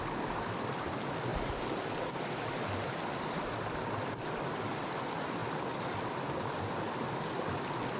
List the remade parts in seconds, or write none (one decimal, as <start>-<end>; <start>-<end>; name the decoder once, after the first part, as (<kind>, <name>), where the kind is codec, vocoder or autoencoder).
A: none